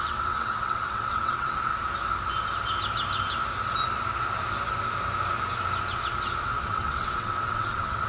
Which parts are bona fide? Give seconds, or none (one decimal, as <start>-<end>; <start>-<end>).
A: 1.7-6.6